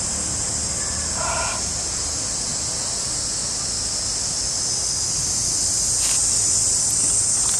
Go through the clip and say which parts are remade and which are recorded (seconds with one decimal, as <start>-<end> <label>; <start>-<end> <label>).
0.0-7.6 recorded